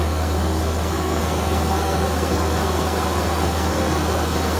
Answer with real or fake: fake